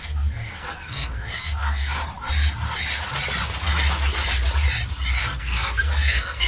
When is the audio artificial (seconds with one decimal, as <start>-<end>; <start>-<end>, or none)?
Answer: 0.0-2.0; 5.2-6.5